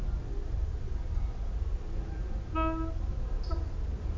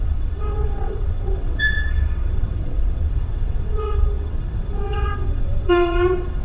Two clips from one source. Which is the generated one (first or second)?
second